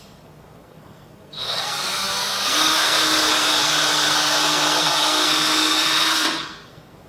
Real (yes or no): no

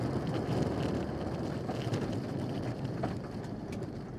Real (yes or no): no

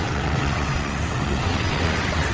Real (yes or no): no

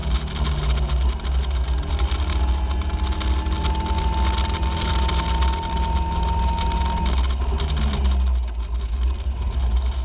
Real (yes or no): yes